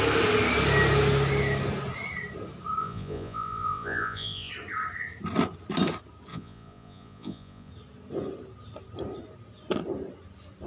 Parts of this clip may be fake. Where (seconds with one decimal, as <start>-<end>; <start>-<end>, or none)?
2.8-4.5; 6.3-7.7

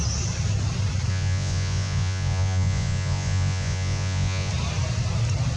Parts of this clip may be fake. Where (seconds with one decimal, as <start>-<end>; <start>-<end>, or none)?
1.1-4.5

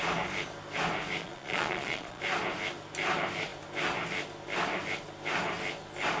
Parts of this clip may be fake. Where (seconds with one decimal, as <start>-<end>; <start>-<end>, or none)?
1.2-2.2

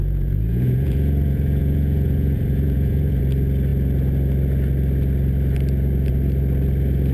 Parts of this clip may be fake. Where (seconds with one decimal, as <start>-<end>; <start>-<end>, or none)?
0.0-3.2

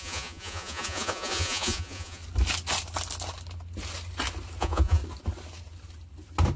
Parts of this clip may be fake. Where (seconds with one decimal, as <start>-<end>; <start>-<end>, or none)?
0.0-2.2; 4.6-5.0

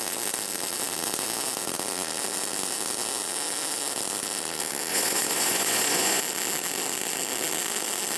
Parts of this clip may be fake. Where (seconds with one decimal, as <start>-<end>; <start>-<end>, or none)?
4.9-6.2